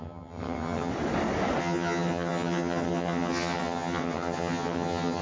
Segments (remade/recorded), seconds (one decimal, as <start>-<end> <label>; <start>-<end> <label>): 0.0-0.9 remade; 0.9-1.6 recorded; 1.6-5.2 remade